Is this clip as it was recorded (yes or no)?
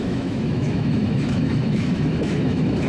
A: no